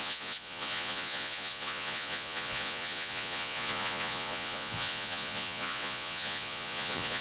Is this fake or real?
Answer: fake